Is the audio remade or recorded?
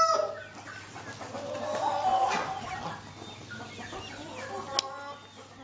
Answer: recorded